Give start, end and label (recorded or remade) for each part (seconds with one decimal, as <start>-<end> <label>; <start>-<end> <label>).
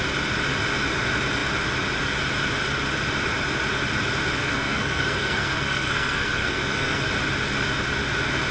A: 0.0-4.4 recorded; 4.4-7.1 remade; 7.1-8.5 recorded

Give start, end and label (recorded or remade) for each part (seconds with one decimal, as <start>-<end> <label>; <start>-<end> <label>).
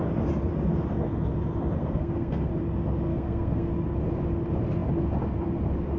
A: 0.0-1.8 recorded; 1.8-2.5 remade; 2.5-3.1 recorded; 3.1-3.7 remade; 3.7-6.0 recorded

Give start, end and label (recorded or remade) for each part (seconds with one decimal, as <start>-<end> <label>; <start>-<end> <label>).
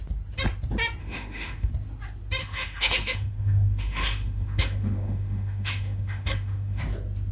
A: 0.0-1.0 recorded; 1.0-1.7 remade; 1.7-2.4 recorded; 2.4-6.8 remade; 6.8-7.3 recorded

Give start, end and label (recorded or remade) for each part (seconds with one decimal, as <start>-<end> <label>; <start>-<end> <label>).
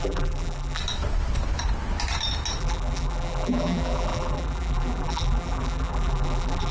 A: 0.0-0.8 remade; 0.8-2.6 recorded; 2.6-6.7 remade